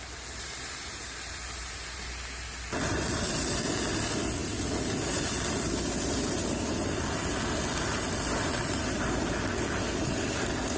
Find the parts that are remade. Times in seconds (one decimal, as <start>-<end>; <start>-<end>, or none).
none